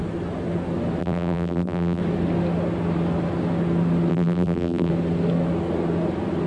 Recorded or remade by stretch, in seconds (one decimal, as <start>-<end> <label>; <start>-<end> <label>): 0.0-1.0 recorded; 1.0-2.0 remade; 2.0-4.1 recorded; 4.1-4.9 remade; 4.9-6.5 recorded